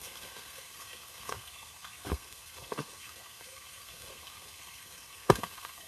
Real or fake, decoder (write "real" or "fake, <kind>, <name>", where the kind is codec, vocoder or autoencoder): fake, codec, SNAC